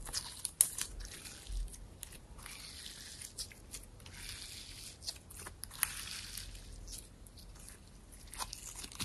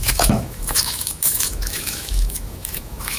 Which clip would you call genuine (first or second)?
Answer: first